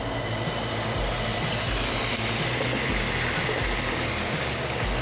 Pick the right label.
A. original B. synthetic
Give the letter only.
A